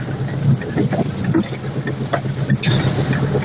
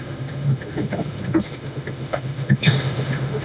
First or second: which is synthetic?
second